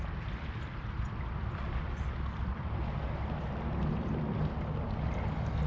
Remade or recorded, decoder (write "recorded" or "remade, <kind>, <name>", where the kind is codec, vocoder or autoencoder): recorded